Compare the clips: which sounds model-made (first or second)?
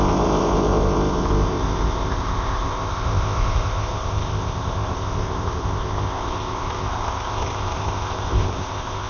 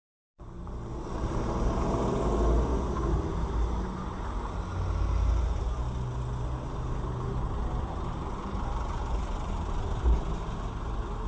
first